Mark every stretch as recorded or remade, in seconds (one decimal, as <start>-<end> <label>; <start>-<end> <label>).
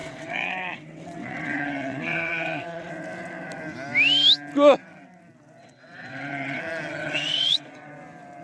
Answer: 0.0-2.9 remade; 2.9-5.6 recorded; 5.6-6.6 remade; 6.6-7.0 recorded; 7.0-7.9 remade; 7.9-8.4 recorded